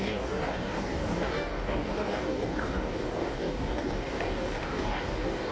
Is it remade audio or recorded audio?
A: remade